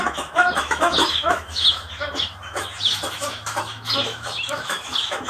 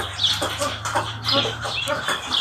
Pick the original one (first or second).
second